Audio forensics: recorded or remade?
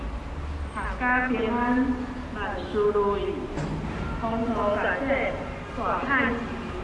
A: recorded